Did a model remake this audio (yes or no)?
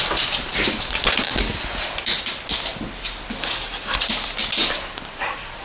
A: no